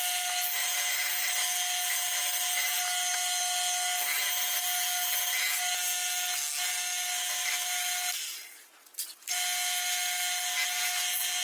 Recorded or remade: recorded